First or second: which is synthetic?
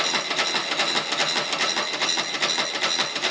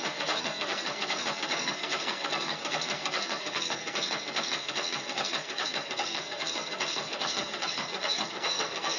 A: second